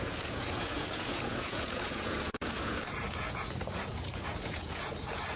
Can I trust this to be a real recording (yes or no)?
no